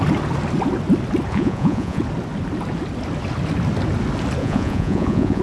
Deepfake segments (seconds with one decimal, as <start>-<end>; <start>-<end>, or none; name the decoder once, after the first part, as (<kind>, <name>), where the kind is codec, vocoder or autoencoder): 1.3-2.0 (vocoder, Vocos); 4.4-5.4